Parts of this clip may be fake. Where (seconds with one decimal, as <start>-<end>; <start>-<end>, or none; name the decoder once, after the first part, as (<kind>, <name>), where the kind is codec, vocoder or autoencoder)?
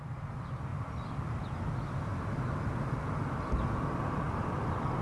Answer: none